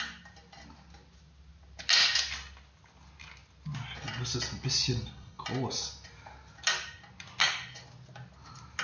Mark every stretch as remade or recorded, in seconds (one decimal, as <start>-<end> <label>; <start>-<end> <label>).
0.0-4.9 recorded; 4.9-5.4 remade; 5.4-8.8 recorded